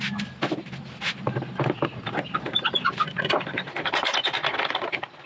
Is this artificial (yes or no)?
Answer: no